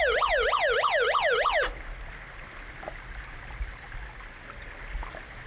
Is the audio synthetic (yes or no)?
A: no